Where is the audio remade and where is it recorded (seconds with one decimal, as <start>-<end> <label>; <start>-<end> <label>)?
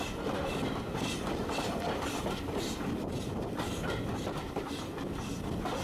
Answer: 0.0-5.8 remade